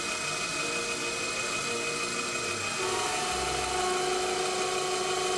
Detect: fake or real real